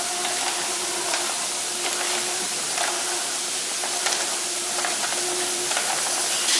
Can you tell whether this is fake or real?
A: real